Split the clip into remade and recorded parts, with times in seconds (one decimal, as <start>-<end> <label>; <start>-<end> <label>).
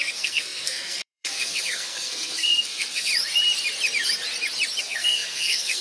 0.0-3.1 remade; 3.1-4.8 recorded; 4.8-5.8 remade